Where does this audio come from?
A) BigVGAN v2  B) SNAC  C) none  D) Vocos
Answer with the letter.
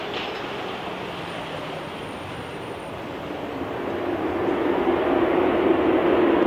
C